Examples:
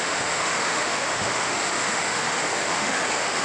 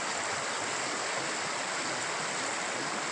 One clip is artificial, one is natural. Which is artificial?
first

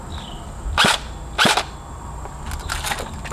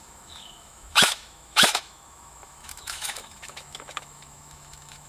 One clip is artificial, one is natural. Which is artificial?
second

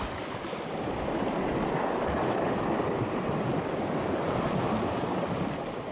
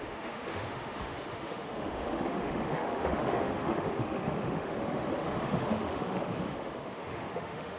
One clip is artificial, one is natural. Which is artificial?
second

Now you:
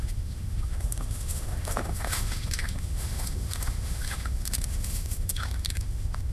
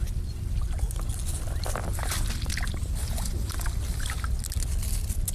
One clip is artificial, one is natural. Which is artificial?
first